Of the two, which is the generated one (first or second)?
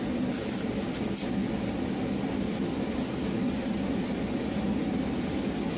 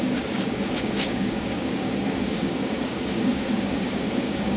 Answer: second